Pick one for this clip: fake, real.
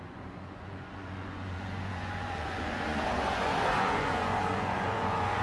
fake